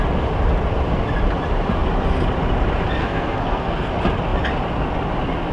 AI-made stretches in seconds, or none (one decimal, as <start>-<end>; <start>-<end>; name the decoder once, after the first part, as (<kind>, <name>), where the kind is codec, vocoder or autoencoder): 3.0-3.9 (codec, SNAC)